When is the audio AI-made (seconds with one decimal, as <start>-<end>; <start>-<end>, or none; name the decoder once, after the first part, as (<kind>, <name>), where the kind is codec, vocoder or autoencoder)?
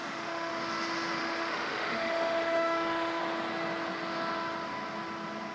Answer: 0.0-0.5 (autoencoder, DAC-VAE); 1.2-3.2